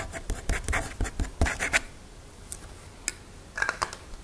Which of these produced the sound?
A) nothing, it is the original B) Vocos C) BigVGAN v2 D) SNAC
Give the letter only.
A